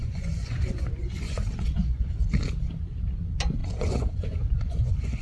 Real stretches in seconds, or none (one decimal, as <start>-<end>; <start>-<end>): 2.0-3.6